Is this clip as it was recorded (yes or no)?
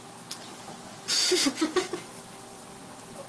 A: yes